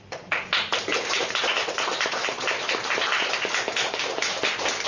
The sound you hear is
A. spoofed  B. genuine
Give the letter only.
B